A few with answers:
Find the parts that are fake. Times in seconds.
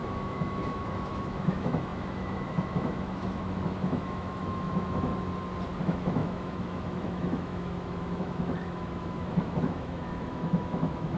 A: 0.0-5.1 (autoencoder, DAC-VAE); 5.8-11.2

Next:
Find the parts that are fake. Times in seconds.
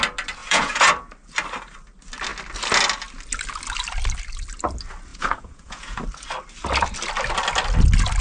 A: 0.4-0.9 (vocoder, Vocos); 5.1-6.0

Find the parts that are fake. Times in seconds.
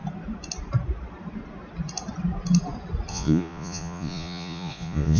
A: 3.1-5.2 (vocoder, Vocos)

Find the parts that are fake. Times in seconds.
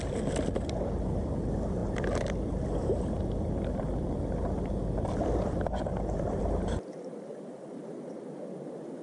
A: none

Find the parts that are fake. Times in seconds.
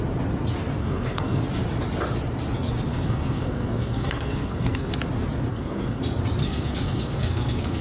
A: 0.8-1.4 (codec, SNAC); 2.9-4.9; 5.5-6.0; 6.4-7.8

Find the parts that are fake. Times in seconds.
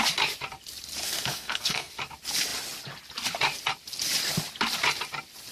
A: 1.0-1.9 (codec, SNAC)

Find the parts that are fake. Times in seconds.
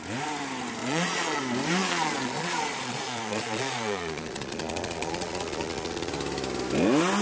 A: 0.8-1.4 (vocoder, Vocos); 1.8-6.1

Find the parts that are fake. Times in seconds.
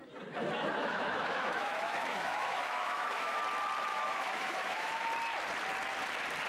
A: 0.8-3.4 (autoencoder, DAC-VAE); 3.9-5.1